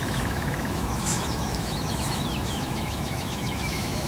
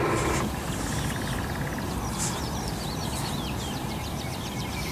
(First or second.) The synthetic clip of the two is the first